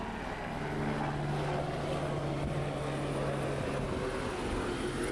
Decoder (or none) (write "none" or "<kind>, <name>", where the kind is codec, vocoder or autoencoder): none